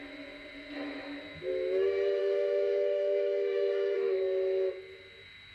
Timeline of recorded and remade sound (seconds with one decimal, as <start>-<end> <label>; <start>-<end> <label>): 0.0-2.2 recorded; 2.2-4.2 remade; 4.2-5.5 recorded